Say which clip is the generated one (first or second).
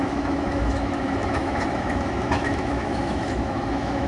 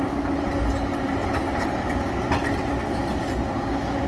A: first